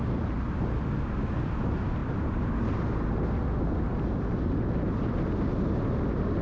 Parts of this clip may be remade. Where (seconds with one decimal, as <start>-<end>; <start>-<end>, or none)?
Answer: none